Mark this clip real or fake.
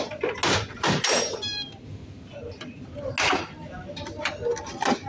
real